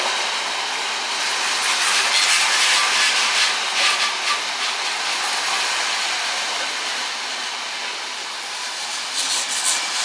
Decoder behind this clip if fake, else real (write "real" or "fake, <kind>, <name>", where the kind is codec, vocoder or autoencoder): real